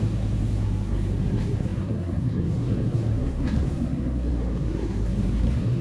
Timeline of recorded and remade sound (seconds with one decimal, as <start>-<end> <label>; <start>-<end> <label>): 0.0-5.8 remade